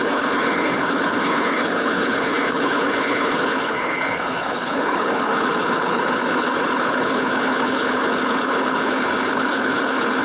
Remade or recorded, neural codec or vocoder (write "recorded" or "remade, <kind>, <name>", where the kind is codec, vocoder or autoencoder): remade, codec, HILCodec